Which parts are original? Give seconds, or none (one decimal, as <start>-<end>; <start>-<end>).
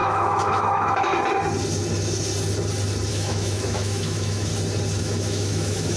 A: 1.1-3.1; 4.5-5.0